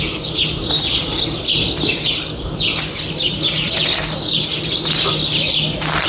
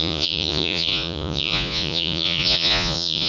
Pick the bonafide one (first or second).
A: first